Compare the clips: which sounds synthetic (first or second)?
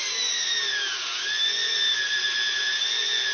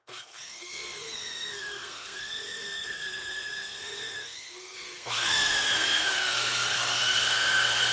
second